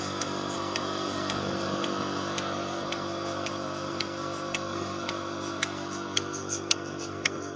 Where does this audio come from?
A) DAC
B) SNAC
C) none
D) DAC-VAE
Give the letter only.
B